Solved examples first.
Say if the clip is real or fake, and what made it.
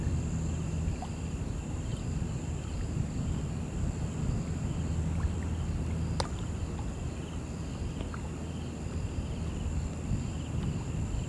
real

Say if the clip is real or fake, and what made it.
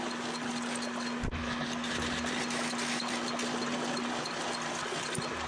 real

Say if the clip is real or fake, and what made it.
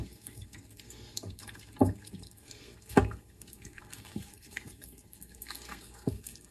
fake, codec, SNAC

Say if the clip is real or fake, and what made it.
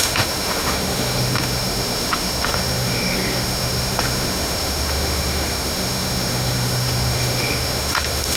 fake, autoencoder, DAC-VAE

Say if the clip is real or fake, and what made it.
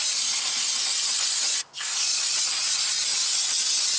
real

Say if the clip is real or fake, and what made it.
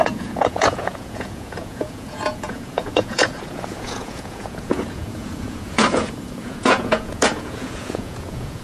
fake, vocoder, Vocos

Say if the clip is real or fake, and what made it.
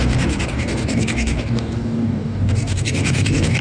fake, codec, DAC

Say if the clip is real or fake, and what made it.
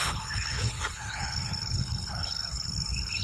fake, codec, HILCodec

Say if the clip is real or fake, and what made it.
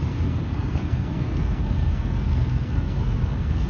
fake, codec, SNAC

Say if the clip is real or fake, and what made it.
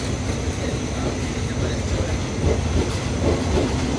real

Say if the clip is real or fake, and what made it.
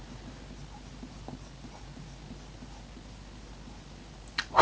real